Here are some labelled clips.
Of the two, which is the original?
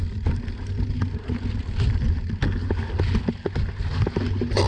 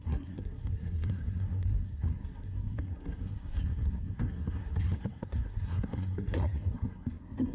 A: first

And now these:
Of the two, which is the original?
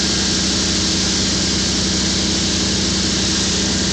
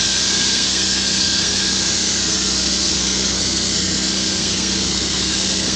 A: first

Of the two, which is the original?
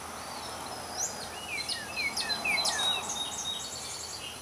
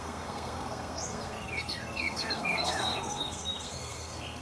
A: first